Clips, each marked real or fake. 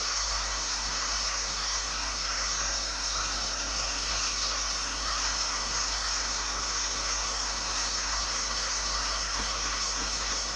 fake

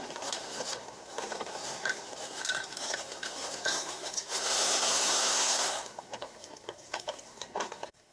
fake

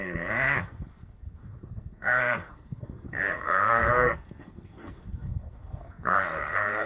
fake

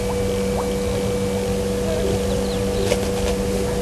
real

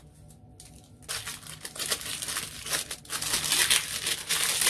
real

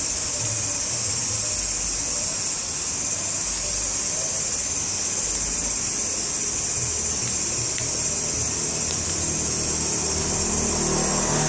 real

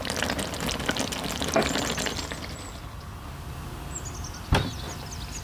real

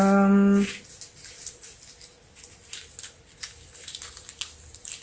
real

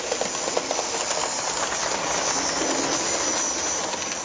real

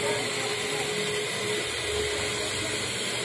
real